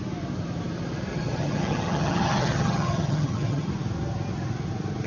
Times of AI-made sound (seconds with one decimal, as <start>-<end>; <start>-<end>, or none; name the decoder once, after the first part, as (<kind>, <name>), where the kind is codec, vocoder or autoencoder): 1.1-3.7 (vocoder, HiFi-GAN)